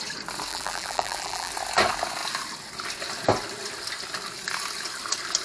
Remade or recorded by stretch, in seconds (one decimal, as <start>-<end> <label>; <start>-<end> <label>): 0.0-0.5 recorded; 0.5-1.5 remade; 1.5-5.4 recorded